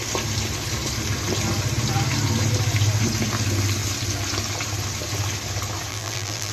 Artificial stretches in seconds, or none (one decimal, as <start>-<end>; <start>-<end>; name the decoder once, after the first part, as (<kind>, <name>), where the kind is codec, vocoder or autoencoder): 5.9-6.5 (vocoder, BigVGAN v2)